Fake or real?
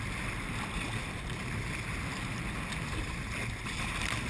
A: real